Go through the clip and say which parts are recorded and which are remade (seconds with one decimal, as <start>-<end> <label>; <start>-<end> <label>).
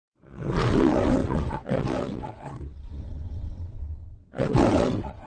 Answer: 0.0-5.3 remade